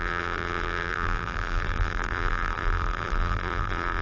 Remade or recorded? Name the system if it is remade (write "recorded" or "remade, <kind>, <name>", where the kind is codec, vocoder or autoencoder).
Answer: remade, vocoder, BigVGAN v2